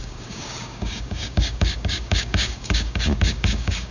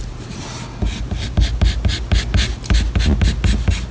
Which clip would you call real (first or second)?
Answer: second